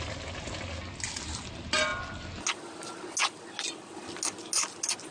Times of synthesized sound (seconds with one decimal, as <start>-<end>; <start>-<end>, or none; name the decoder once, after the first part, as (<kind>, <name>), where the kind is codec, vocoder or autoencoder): none